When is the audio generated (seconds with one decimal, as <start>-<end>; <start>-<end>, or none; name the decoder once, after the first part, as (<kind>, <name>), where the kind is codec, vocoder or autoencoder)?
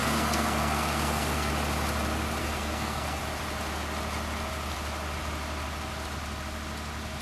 0.0-1.5 (codec, SNAC); 2.4-3.2